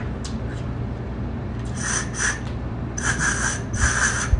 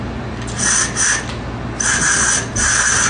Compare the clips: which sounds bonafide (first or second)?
second